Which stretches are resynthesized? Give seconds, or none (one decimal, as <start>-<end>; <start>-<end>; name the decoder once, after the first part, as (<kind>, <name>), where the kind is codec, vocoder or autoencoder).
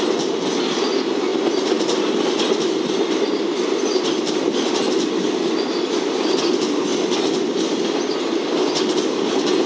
none